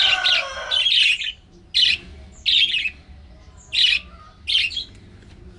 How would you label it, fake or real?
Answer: real